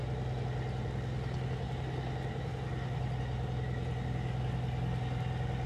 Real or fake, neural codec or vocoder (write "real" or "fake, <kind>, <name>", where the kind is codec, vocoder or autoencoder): real